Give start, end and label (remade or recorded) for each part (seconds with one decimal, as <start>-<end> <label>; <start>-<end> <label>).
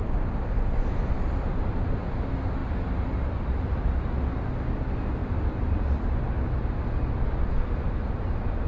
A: 0.0-8.7 recorded